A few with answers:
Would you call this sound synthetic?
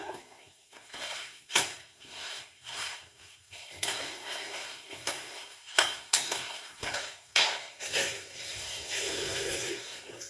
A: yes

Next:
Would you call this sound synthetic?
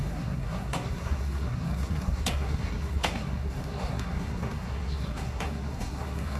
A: yes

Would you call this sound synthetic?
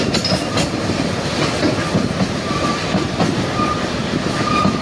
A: no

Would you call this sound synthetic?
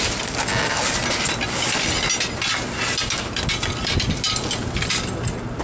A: no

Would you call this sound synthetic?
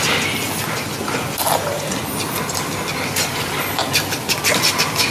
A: no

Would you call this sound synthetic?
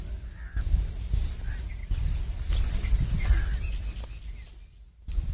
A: no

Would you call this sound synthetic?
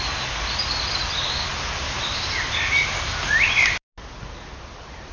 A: no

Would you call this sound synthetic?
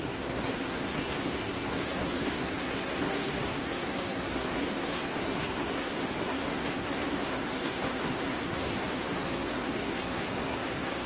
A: yes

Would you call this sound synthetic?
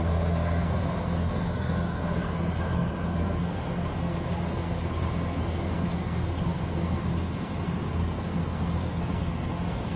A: yes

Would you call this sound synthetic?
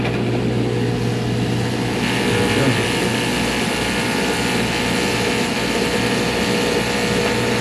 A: no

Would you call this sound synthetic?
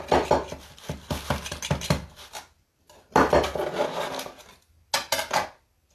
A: no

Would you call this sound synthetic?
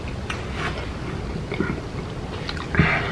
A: no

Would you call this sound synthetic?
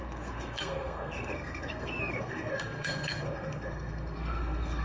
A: yes